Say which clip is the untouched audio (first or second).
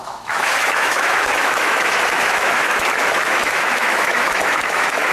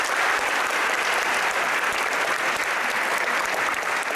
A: second